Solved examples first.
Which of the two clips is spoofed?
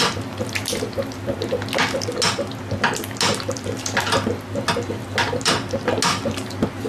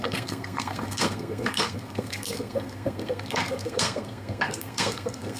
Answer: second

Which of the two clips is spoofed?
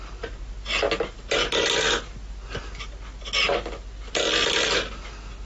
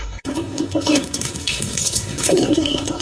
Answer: second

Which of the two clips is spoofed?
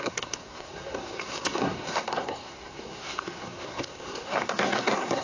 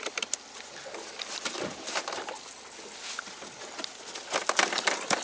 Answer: first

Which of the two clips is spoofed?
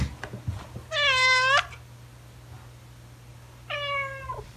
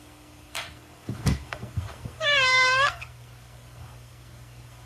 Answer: second